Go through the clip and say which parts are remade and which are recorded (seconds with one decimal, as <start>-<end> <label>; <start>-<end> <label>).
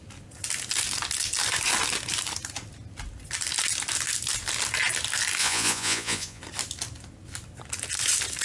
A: 0.0-5.4 recorded; 5.4-6.4 remade; 6.4-8.4 recorded